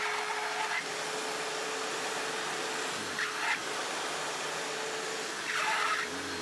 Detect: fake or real real